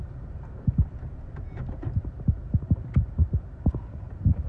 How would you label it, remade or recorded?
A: remade